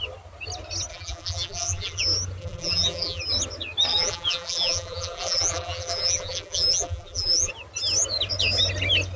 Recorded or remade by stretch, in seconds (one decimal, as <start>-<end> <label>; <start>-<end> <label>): 0.0-0.9 recorded; 0.9-2.0 remade; 2.0-2.4 recorded; 2.4-3.2 remade; 3.2-3.9 recorded; 3.9-7.5 remade; 7.5-9.2 recorded